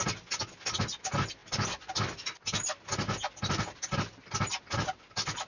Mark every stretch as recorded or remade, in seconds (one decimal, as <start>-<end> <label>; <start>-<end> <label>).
0.0-5.5 recorded